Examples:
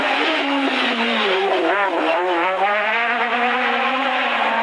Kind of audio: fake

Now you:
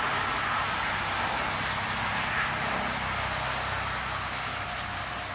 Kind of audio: real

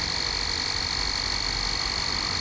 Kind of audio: real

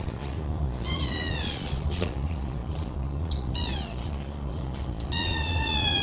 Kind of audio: fake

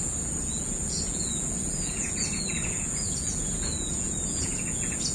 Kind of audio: fake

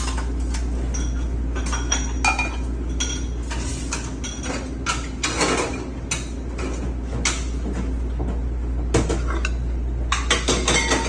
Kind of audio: real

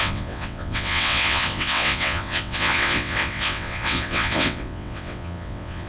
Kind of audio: fake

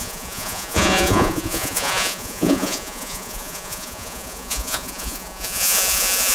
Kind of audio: fake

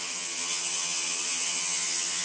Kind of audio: fake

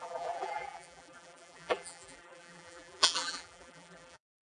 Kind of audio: fake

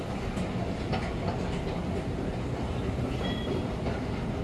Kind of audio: real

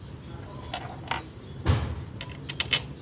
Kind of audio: real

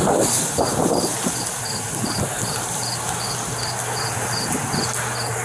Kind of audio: real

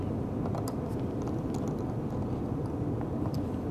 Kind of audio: real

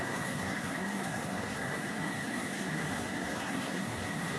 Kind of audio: fake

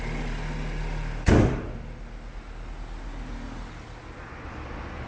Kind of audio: real